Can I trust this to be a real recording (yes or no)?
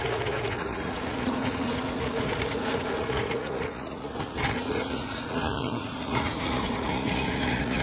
no